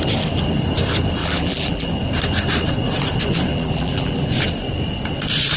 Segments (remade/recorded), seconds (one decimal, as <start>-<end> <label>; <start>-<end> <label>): 0.0-1.2 recorded; 1.2-1.9 remade; 1.9-3.5 recorded; 3.5-4.3 remade; 4.3-5.6 recorded